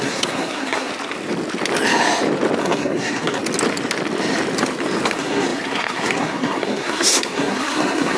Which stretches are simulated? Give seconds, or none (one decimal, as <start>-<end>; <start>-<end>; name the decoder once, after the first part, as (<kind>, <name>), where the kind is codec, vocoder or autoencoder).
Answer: 0.0-0.9 (codec, SNAC); 2.6-3.4; 5.1-8.2